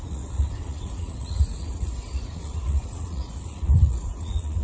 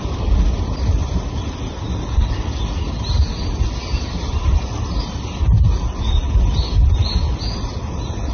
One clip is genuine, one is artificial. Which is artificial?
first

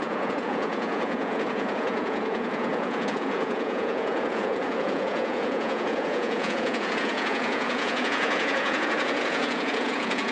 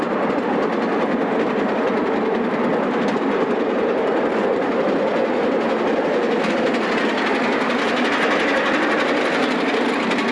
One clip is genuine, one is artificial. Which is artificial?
first